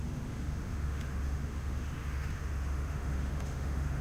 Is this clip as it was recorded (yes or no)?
no